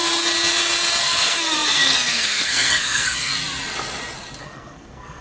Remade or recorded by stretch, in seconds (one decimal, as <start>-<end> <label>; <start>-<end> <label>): 0.0-1.0 recorded; 1.0-3.3 remade; 3.3-4.4 recorded; 4.4-5.2 remade